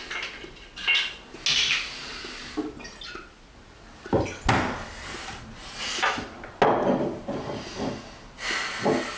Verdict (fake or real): real